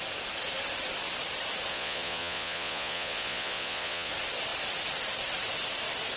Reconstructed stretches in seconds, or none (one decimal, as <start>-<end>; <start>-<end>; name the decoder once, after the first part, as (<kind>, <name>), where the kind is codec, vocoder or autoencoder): 1.7-4.1 (vocoder, Vocos)